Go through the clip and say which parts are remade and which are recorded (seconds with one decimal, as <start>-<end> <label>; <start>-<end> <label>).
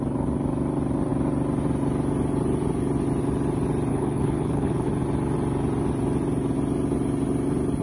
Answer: 0.0-3.9 recorded; 3.9-4.9 remade; 4.9-7.8 recorded